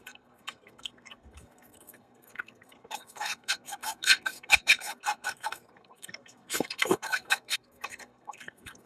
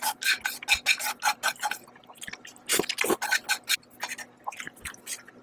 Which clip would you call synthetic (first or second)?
first